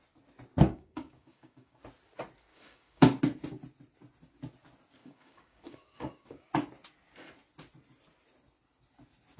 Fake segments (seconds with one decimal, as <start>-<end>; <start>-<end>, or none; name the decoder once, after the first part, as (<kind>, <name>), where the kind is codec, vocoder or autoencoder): 0.7-1.8 (codec, DAC); 2.5-3.2; 5.0-6.5